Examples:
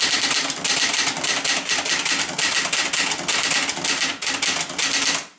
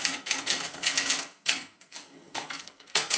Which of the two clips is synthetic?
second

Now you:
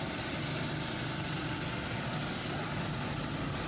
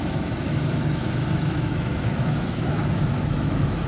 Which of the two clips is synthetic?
second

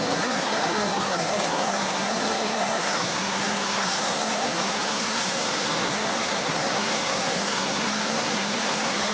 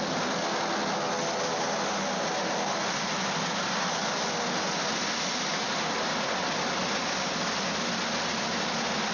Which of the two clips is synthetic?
first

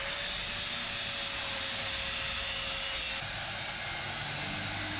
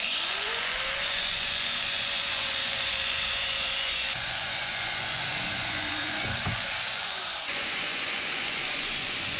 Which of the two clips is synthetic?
second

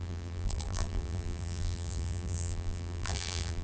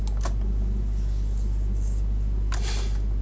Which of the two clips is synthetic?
first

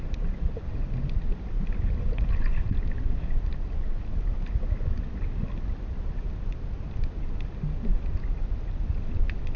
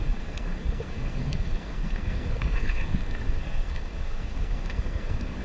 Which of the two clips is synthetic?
second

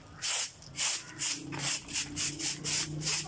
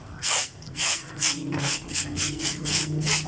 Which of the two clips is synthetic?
second